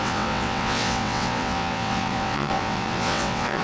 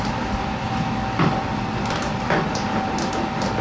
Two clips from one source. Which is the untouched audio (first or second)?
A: second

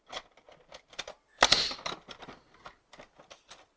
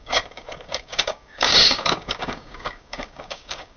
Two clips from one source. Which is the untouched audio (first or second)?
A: first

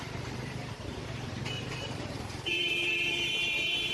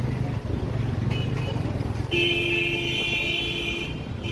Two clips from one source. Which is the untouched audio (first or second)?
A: second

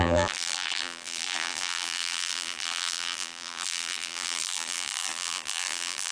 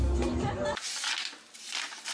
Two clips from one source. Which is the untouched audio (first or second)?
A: second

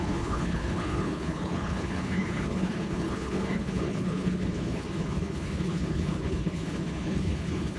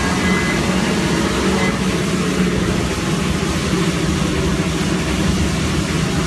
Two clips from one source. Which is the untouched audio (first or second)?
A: second